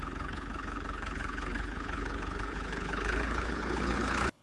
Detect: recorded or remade remade